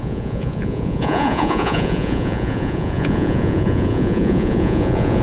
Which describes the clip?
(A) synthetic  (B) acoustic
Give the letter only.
A